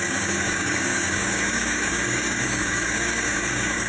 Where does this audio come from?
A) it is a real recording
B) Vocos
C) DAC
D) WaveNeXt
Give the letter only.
C